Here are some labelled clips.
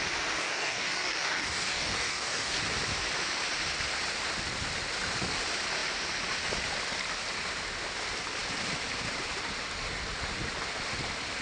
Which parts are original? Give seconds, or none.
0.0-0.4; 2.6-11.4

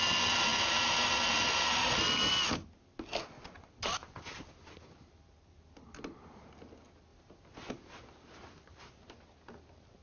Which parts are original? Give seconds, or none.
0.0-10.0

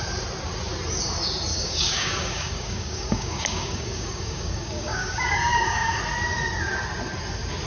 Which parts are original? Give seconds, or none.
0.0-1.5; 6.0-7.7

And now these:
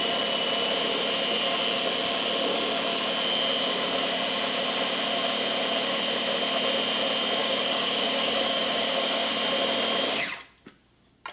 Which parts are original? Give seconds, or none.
0.0-7.4; 9.3-11.3

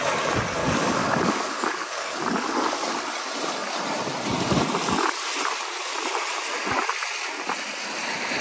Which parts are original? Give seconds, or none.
0.0-0.6; 3.1-8.4